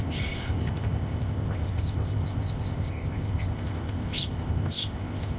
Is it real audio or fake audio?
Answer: fake